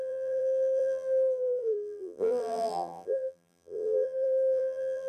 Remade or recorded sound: remade